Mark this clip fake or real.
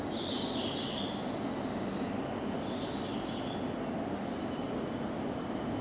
real